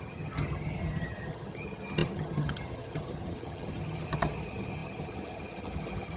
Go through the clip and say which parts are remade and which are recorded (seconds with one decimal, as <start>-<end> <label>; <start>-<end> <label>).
0.0-6.2 remade